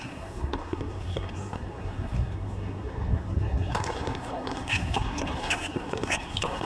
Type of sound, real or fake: fake